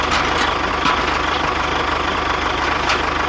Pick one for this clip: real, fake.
real